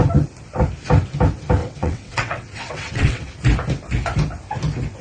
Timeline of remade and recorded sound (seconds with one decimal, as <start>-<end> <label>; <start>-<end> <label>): 0.0-1.6 recorded; 1.6-3.2 remade; 3.2-5.0 recorded